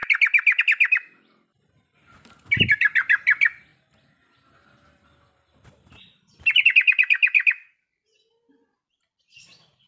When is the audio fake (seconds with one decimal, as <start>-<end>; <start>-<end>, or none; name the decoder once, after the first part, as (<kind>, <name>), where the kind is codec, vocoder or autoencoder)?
none